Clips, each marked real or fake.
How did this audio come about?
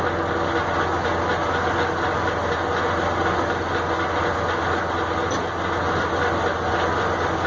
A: real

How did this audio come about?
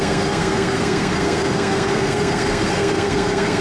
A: fake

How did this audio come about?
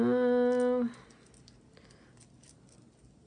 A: real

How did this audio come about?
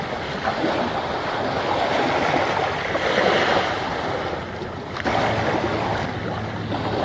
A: real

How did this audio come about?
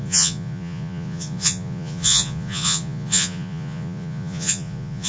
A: fake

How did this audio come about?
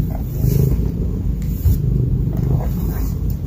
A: fake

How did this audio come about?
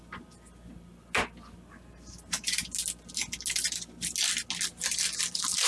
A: real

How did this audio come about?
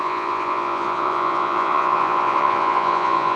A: fake